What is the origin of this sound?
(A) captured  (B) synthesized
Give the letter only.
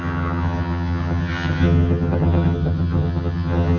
B